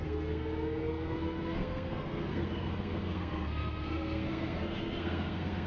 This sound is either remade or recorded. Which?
remade